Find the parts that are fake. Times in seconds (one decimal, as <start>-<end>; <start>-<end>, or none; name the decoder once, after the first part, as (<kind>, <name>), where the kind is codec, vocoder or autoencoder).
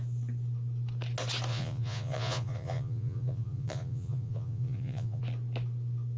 1.5-5.2 (vocoder, Vocos)